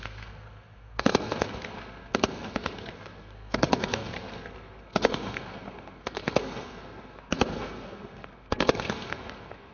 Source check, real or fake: fake